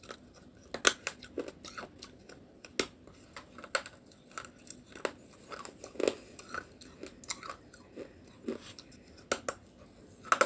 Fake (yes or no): no